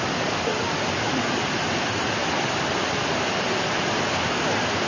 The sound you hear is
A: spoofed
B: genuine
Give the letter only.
B